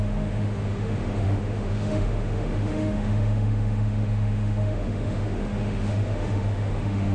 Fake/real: fake